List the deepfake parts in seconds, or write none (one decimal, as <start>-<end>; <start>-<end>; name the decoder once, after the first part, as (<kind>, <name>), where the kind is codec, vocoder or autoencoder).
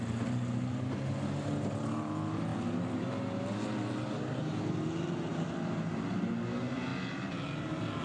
none